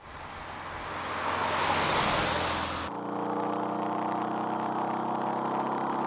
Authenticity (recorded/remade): recorded